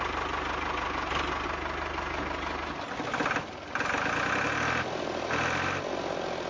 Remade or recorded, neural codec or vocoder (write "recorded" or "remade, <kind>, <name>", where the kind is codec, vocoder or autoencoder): recorded